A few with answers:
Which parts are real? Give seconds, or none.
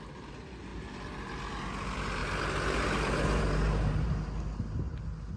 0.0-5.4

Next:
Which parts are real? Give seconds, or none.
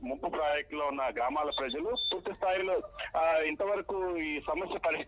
0.0-2.6; 3.5-5.1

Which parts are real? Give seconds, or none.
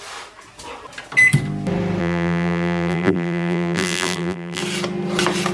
0.0-2.0; 4.6-5.5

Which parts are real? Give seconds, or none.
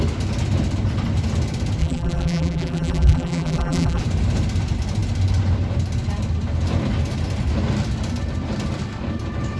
0.0-1.8; 4.0-9.6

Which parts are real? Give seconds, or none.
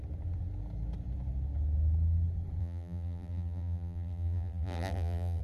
0.0-2.6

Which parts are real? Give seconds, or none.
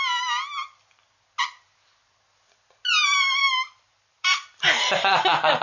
0.0-3.4